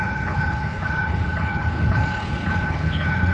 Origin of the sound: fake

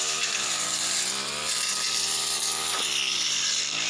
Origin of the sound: real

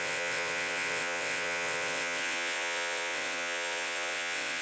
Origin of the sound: fake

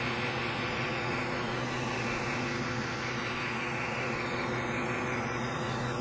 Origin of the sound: real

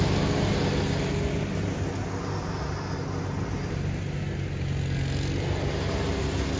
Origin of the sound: real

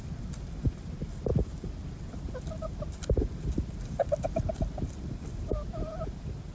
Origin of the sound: real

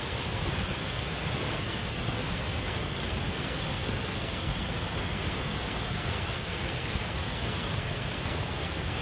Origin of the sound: fake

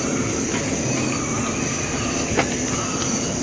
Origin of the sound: real